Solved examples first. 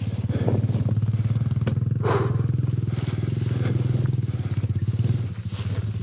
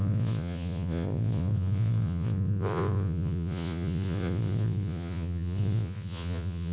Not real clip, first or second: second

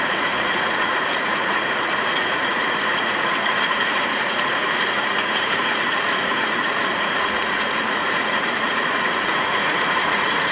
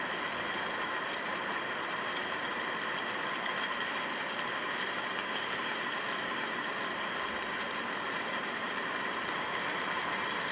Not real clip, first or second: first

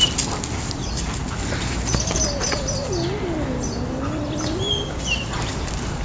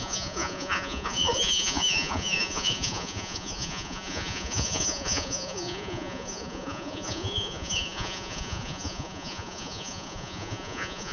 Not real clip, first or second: second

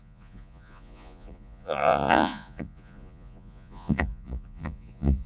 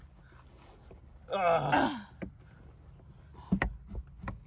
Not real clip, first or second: first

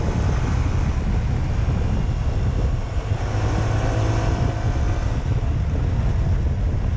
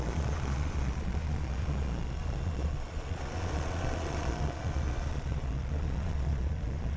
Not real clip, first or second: second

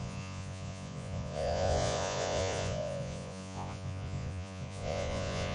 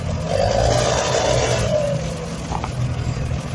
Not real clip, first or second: first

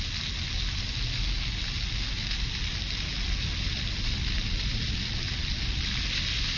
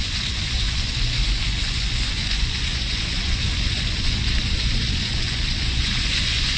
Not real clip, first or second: second